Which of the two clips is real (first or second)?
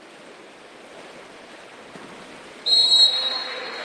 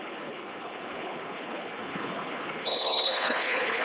first